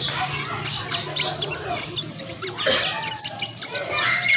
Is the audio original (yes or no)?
yes